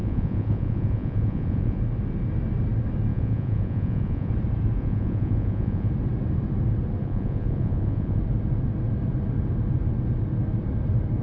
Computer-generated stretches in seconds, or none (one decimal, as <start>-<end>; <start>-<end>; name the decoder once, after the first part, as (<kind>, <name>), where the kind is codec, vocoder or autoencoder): 0.0-1.8 (vocoder, Vocos); 3.1-4.3; 4.8-5.9; 7.0-8.2